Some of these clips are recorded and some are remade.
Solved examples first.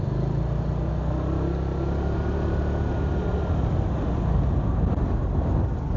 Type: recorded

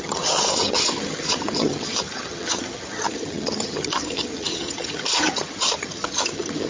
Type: remade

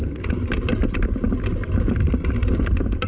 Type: recorded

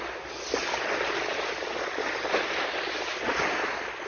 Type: recorded